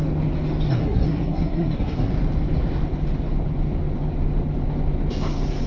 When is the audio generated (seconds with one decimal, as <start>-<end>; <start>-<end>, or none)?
0.7-2.1